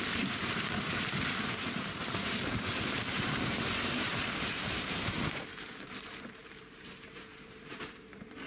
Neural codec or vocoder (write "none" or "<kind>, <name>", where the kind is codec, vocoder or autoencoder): vocoder, BigVGAN v2